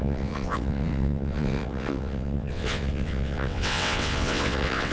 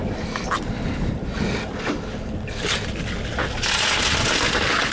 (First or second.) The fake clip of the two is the first